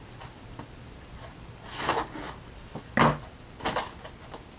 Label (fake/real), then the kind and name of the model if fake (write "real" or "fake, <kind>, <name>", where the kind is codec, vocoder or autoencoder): real